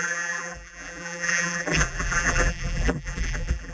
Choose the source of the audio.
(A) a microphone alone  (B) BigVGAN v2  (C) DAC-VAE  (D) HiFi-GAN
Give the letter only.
B